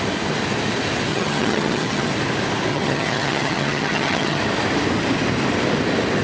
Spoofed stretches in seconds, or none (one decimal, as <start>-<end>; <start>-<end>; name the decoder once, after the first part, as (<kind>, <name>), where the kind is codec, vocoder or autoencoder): 1.1-2.1 (vocoder, HiFi-GAN); 2.7-4.4